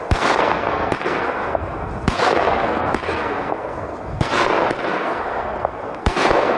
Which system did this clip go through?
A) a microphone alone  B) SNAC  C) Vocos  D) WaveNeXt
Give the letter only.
B